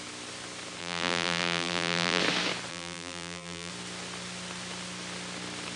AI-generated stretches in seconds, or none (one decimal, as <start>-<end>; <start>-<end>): 0.8-2.2; 2.7-3.7